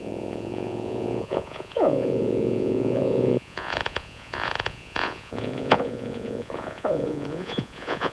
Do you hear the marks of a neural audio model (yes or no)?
yes